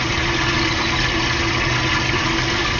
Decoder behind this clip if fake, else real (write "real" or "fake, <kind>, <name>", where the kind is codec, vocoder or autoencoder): real